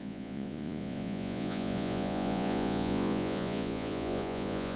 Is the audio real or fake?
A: fake